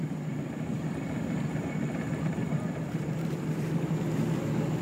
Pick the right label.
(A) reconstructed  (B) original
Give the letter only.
B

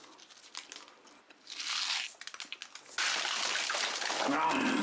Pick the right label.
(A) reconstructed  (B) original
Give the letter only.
B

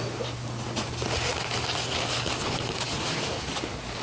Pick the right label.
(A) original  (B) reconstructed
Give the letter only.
A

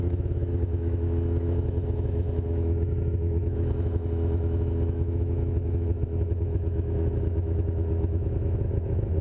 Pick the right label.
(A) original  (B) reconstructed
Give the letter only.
B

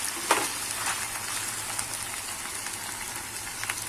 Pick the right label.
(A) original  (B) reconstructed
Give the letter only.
A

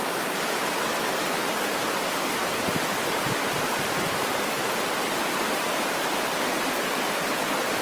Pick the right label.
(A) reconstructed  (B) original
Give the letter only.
B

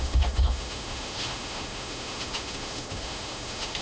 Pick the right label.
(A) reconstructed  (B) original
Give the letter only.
A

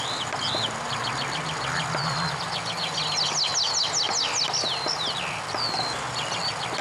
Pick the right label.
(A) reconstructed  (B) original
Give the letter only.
B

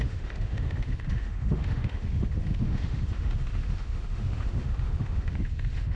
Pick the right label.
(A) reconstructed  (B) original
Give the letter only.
A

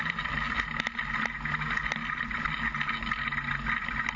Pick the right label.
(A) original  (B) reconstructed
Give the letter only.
A